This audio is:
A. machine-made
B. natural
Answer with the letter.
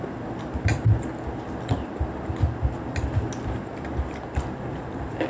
B